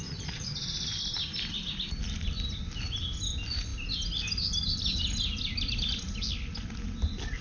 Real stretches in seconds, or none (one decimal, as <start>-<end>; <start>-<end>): 0.0-7.4